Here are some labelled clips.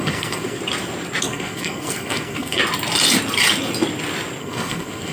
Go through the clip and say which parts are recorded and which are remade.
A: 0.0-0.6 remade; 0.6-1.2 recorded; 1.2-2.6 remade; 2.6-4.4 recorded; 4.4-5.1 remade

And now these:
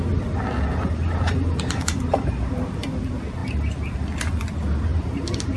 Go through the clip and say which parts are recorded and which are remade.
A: 0.0-0.7 recorded; 0.7-2.0 remade; 2.0-4.9 recorded; 4.9-5.6 remade